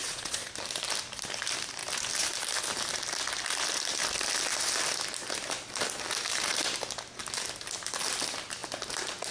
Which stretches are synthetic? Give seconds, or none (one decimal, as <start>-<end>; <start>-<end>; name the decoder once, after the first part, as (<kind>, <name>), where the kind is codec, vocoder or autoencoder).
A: 0.0-0.5 (vocoder, Vocos)